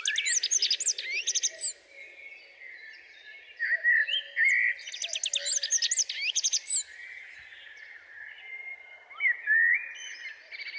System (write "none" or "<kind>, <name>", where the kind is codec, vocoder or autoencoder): none